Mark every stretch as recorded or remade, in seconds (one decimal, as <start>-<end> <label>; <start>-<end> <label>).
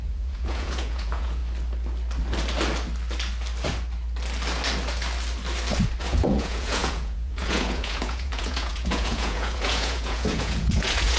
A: 0.0-1.4 remade; 1.4-6.0 recorded; 6.0-11.2 remade